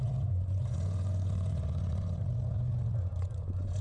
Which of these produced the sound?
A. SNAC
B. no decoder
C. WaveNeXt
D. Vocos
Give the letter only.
D